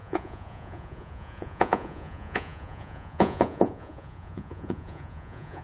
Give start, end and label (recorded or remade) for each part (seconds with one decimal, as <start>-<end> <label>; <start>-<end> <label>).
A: 0.0-5.6 remade